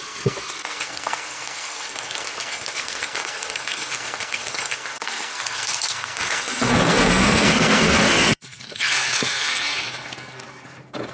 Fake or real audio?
fake